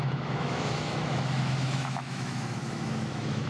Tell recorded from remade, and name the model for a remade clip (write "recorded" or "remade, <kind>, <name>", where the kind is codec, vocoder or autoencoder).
remade, autoencoder, DAC-VAE